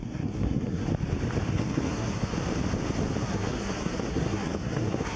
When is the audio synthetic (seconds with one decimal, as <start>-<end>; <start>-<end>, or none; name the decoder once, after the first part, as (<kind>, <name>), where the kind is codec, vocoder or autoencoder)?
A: 0.0-0.9 (codec, SNAC); 1.5-2.3; 3.2-5.2